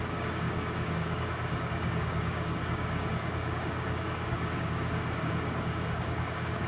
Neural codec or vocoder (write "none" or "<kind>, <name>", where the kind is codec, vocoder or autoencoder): codec, DAC